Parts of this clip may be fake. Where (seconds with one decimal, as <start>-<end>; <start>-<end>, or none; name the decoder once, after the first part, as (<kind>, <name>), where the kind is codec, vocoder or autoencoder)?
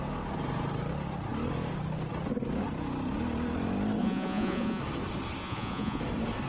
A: 4.0-4.8 (vocoder, Vocos); 5.4-6.0